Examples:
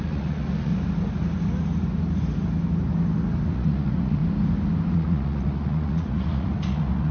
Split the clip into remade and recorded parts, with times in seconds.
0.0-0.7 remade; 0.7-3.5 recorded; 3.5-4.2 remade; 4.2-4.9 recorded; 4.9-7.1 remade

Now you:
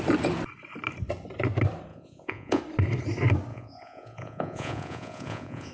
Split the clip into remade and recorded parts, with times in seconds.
0.0-1.9 recorded; 1.9-2.6 remade; 2.6-3.5 recorded; 3.5-5.7 remade

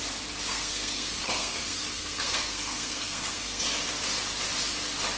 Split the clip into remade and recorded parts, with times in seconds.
0.0-0.5 recorded; 0.5-3.6 remade; 3.6-5.2 recorded

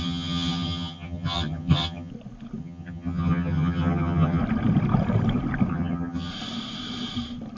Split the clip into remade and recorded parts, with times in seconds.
0.0-2.1 remade; 2.1-2.6 recorded; 2.6-4.4 remade; 4.4-5.7 recorded; 5.7-6.3 remade; 6.3-7.6 recorded

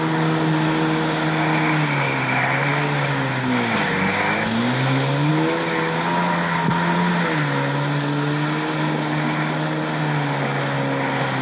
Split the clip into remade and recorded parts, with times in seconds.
0.0-11.4 recorded

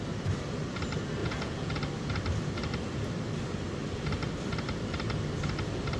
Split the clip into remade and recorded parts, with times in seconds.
0.0-1.2 recorded; 1.2-1.8 remade; 1.8-6.0 recorded

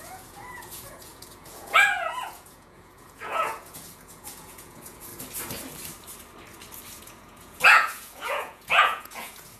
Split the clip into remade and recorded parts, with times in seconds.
0.0-5.1 remade; 5.1-7.0 recorded; 7.0-9.6 remade